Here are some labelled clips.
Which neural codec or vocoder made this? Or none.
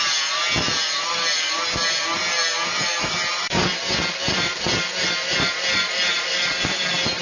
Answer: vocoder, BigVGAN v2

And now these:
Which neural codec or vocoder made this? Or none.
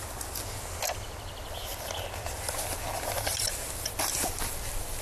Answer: none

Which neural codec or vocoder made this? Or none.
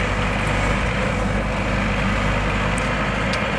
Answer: none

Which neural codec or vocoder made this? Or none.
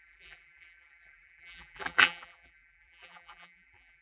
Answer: vocoder, BigVGAN v2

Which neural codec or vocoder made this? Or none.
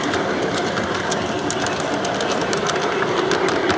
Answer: none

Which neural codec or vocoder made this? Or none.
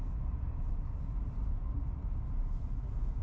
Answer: none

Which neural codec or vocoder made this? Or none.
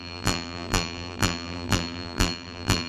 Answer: vocoder, BigVGAN v2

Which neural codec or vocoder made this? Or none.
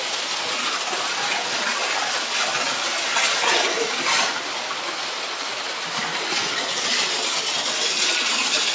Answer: none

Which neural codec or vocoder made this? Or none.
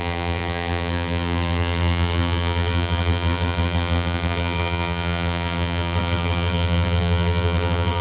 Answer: vocoder, BigVGAN v2